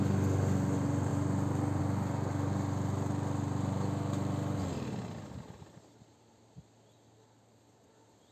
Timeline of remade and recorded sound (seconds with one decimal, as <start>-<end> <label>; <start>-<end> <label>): 0.0-8.3 recorded